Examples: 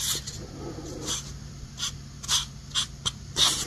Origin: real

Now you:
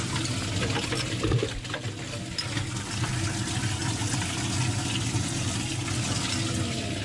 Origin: real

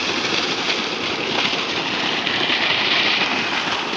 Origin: real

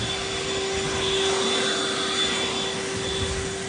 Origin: real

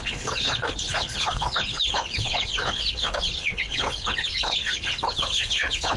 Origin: fake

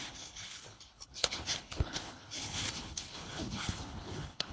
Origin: fake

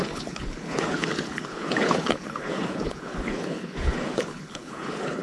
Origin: fake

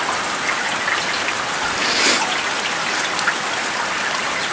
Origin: real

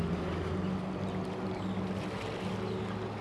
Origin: real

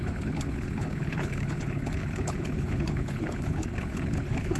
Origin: fake